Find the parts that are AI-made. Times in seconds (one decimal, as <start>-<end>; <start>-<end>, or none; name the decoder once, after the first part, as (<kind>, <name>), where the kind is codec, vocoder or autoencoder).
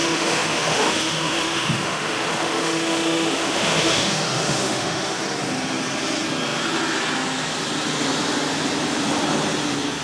0.0-5.2 (autoencoder, DAC-VAE)